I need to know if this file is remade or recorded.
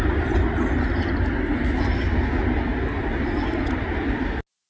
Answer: recorded